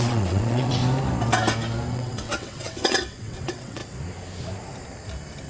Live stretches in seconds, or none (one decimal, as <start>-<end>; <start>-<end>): 0.8-1.9; 3.8-5.5